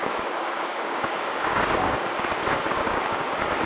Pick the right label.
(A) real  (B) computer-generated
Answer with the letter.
B